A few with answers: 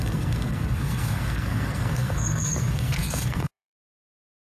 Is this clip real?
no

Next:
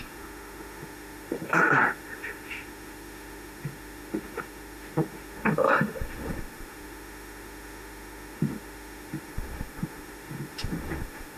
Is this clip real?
no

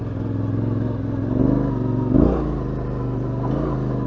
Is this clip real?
yes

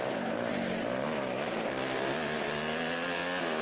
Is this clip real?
yes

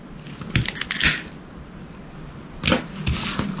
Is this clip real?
yes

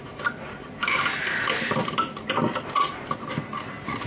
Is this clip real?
yes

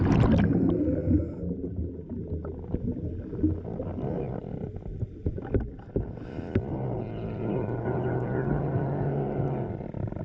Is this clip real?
yes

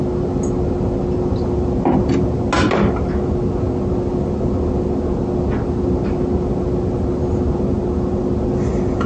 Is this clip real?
yes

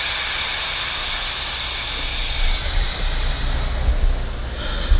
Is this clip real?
yes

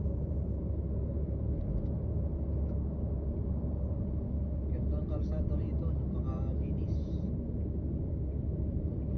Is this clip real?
yes